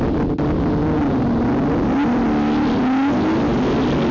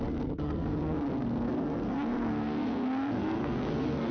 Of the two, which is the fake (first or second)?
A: second